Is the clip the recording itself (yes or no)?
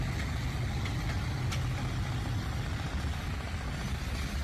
yes